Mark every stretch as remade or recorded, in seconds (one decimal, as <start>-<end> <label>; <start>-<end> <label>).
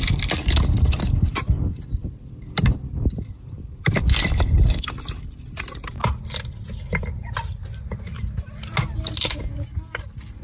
0.0-2.0 recorded; 2.0-4.0 remade; 4.0-6.0 recorded; 6.0-7.8 remade; 7.8-10.4 recorded